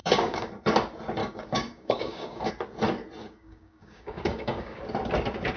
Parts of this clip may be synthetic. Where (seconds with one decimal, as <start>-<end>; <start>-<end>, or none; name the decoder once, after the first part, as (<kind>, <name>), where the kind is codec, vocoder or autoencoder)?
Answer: 0.0-0.5 (codec, DAC); 1.2-2.5; 3.2-4.8